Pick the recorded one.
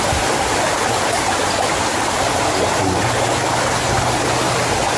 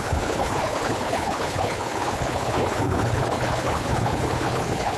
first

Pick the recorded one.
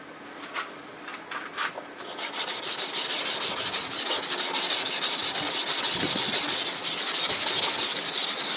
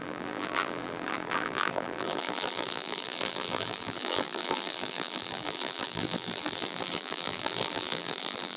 first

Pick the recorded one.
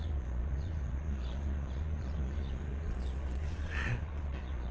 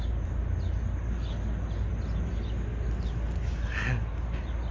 second